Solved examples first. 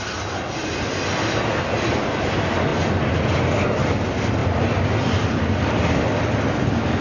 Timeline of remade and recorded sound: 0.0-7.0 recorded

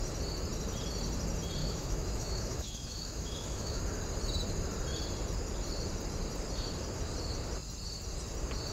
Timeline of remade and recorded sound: 0.0-1.6 recorded; 1.6-3.8 remade; 3.8-8.7 recorded

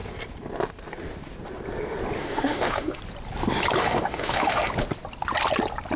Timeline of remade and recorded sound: 0.0-2.2 recorded; 2.2-3.0 remade; 3.0-3.8 recorded; 3.8-4.7 remade; 4.7-6.0 recorded

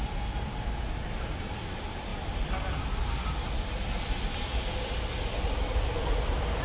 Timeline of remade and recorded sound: 0.0-6.6 recorded

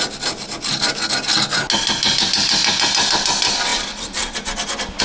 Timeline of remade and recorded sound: 0.0-5.0 recorded